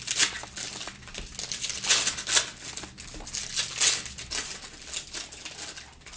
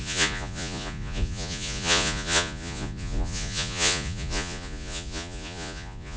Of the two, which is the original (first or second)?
first